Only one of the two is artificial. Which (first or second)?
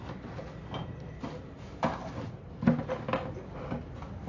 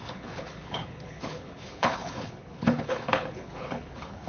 second